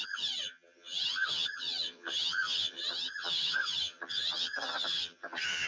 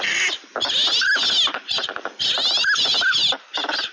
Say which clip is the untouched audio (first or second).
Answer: second